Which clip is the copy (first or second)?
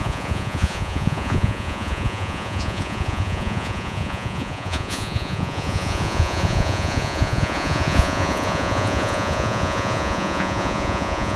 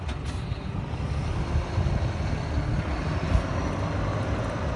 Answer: first